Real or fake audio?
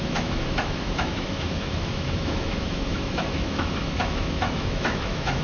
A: fake